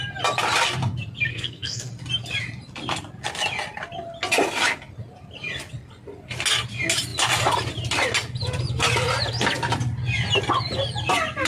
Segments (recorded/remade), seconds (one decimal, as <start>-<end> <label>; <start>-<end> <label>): 0.0-1.3 recorded; 1.3-1.9 remade; 1.9-11.5 recorded